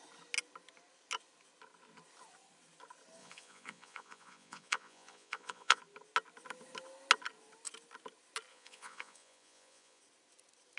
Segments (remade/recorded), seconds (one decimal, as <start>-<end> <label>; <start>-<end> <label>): 0.0-3.2 recorded; 3.2-5.8 remade; 5.8-8.5 recorded; 8.5-10.0 remade; 10.0-10.8 recorded